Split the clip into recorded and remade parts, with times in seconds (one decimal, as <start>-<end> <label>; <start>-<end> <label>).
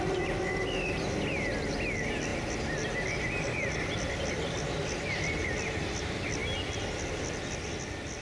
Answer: 0.0-2.3 recorded; 2.3-4.1 remade; 4.1-8.2 recorded